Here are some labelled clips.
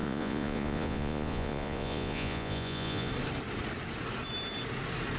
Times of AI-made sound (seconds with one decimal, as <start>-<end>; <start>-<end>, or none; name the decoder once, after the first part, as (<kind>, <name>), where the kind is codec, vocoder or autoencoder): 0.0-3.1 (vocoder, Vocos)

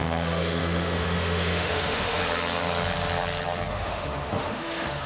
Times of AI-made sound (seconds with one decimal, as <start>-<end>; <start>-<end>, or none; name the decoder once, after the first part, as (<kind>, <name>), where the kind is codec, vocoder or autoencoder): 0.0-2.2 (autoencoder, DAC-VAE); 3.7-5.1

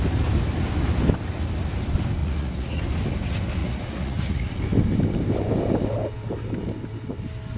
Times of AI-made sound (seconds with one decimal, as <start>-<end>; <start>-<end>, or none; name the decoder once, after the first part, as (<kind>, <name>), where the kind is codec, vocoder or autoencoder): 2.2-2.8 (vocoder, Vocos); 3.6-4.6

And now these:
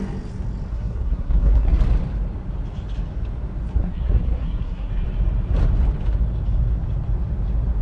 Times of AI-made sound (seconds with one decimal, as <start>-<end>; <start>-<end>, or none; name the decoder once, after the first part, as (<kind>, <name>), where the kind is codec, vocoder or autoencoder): 0.7-1.8 (codec, SNAC); 3.7-4.9

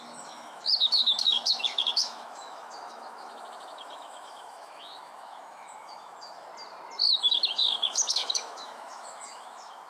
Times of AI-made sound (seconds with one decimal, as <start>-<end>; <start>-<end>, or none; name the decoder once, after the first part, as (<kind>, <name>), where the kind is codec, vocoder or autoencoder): 0.0-6.5 (autoencoder, DAC-VAE); 7.1-9.9

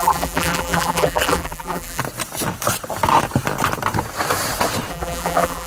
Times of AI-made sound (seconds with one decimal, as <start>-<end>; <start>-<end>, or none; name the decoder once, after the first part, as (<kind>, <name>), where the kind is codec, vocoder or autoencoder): 0.0-2.0 (vocoder, BigVGAN v2); 4.9-5.7

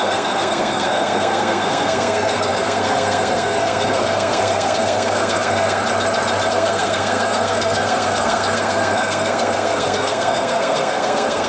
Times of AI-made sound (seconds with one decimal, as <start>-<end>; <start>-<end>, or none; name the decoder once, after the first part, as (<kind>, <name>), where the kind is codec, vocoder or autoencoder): 0.0-5.8 (codec, SNAC); 6.5-11.5